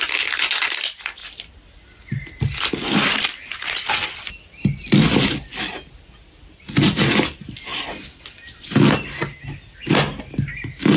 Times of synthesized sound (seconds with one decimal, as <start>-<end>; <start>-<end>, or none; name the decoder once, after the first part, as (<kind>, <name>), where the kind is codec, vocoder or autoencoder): 7.7-8.2 (vocoder, BigVGAN v2)